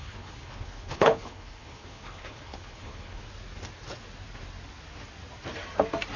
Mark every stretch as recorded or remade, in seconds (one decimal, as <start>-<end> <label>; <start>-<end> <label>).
0.0-3.2 remade; 3.2-6.2 recorded